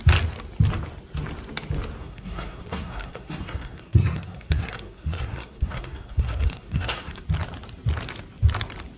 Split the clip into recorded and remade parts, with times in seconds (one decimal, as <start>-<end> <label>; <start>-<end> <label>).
0.0-2.0 recorded; 2.0-7.2 remade; 7.2-9.0 recorded